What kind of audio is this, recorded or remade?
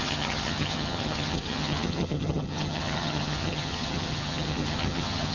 remade